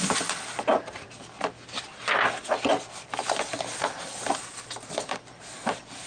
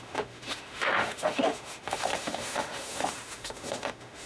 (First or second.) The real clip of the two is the first